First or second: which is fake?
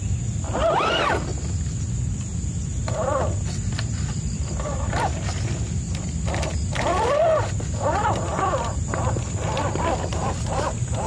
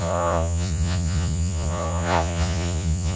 second